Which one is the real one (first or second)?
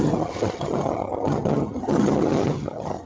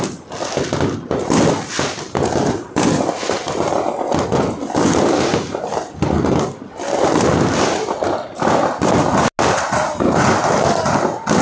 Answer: second